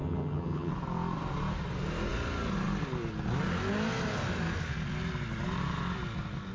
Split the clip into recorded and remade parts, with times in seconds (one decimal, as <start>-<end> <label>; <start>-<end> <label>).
0.0-0.7 remade; 0.7-6.5 recorded